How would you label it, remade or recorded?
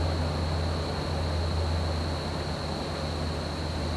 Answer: recorded